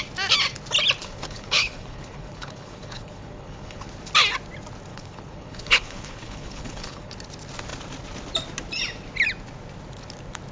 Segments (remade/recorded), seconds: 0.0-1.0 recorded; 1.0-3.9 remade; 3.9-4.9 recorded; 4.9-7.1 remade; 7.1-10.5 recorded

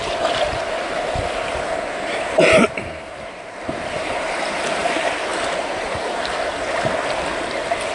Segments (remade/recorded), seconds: 0.0-5.3 remade; 5.3-6.2 recorded; 6.2-7.9 remade

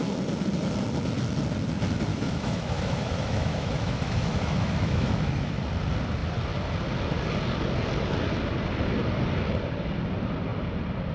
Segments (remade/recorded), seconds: 0.0-2.1 recorded; 2.1-5.6 remade; 5.6-11.1 recorded